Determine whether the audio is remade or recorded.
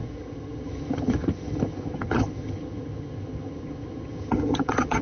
remade